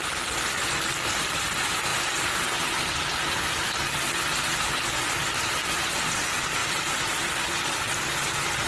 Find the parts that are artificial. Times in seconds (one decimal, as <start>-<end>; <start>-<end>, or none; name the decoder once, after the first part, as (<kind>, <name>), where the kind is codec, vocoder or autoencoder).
none